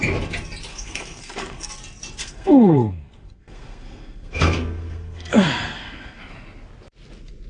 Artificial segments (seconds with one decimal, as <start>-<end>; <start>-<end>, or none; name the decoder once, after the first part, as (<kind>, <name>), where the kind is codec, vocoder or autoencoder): 0.7-1.7 (codec, SNAC); 2.2-6.2